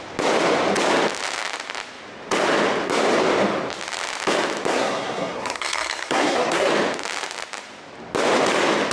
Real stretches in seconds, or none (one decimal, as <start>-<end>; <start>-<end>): 0.0-4.7; 6.7-8.9